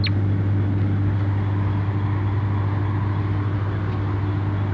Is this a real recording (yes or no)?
yes